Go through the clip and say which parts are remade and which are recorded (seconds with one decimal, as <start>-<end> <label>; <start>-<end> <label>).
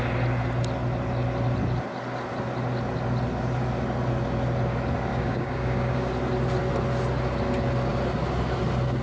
0.0-5.1 recorded; 5.1-6.1 remade; 6.1-9.0 recorded